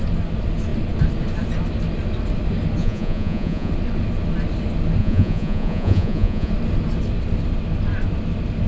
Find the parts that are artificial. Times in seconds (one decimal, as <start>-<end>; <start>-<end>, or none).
2.8-3.7; 5.0-6.5